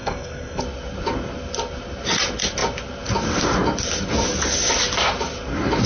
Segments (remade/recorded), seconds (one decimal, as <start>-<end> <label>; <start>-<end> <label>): 0.0-0.6 remade; 0.6-5.9 recorded